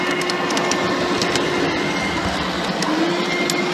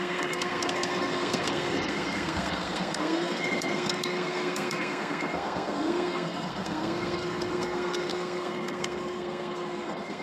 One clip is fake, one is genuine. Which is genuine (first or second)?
first